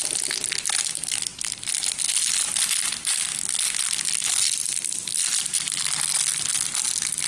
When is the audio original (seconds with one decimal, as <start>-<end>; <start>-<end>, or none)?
0.0-7.3